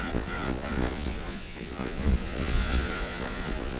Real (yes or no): no